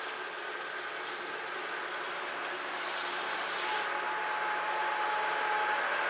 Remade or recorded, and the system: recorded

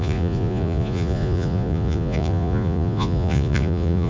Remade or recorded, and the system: remade, vocoder, Vocos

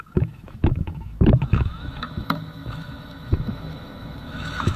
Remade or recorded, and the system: remade, autoencoder, DAC-VAE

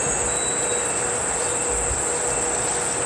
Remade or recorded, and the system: recorded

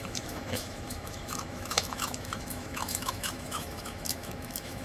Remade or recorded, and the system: remade, autoencoder, DAC-VAE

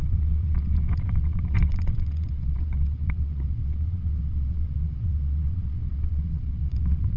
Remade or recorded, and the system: remade, vocoder, WaveNeXt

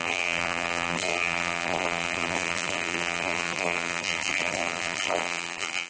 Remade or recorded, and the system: remade, vocoder, BigVGAN v2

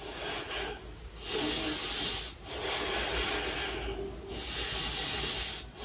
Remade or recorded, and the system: recorded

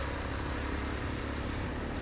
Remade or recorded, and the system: recorded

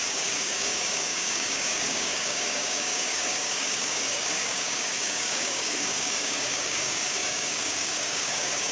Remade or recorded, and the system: remade, codec, DAC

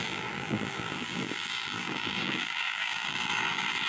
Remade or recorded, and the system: remade, vocoder, BigVGAN v2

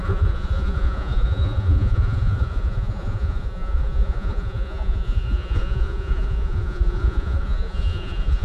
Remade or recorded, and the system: remade, vocoder, Vocos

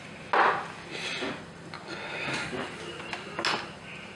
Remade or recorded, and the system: recorded